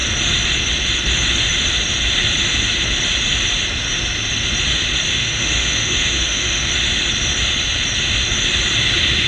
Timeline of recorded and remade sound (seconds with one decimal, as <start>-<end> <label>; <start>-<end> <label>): 0.0-5.1 recorded; 5.1-6.7 remade; 6.7-9.3 recorded